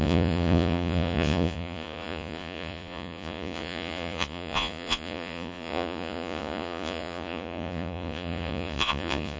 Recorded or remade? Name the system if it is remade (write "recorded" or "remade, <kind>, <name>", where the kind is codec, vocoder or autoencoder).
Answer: remade, vocoder, Vocos